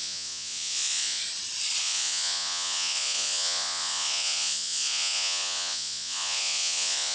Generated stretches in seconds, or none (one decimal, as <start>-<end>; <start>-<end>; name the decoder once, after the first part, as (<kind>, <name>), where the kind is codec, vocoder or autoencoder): 0.0-1.2 (vocoder, Vocos); 1.8-7.1